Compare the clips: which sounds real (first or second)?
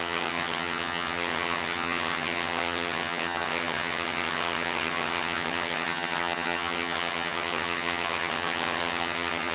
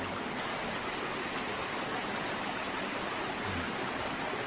second